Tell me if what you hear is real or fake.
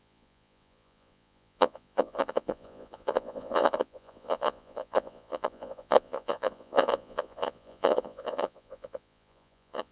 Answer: fake